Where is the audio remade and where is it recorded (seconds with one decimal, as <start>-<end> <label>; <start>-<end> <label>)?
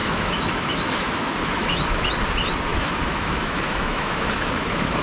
0.0-2.1 remade; 2.1-2.7 recorded; 2.7-5.0 remade